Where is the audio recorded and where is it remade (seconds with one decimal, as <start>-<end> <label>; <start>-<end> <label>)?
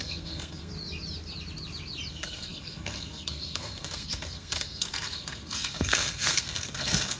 0.0-0.7 remade; 0.7-2.1 recorded; 2.1-7.2 remade